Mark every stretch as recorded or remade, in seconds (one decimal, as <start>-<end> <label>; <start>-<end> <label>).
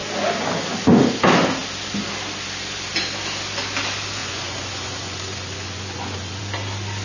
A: 0.0-4.2 recorded; 4.2-6.4 remade; 6.4-7.0 recorded